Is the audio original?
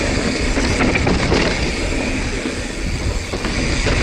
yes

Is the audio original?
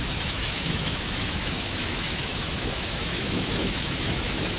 no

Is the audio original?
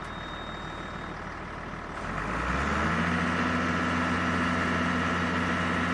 yes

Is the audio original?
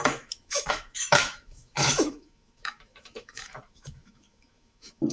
no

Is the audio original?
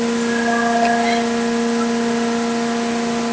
yes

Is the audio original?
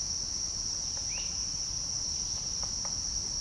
yes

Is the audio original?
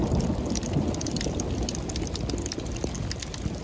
yes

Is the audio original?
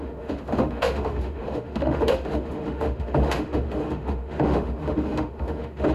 no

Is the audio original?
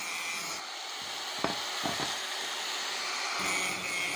yes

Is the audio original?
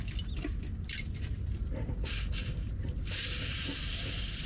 yes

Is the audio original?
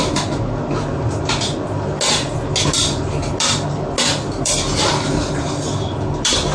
yes